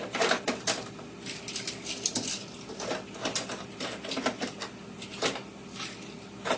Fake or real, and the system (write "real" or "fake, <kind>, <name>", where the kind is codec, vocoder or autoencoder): real